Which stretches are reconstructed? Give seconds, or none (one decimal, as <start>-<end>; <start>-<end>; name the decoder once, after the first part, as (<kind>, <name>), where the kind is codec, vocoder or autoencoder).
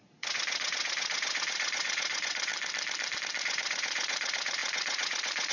0.0-2.5 (vocoder, Vocos); 3.4-5.5